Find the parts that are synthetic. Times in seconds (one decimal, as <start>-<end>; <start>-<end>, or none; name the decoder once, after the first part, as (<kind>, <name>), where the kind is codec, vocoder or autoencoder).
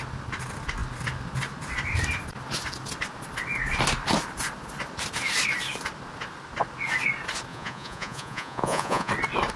7.5-9.1 (vocoder, Vocos)